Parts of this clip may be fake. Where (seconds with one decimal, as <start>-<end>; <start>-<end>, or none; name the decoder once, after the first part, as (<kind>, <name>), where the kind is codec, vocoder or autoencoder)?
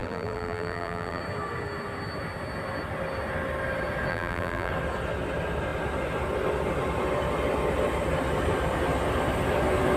0.0-1.2 (vocoder, BigVGAN v2); 4.1-4.7